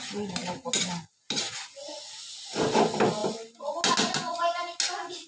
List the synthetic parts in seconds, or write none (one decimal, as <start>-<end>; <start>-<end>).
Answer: none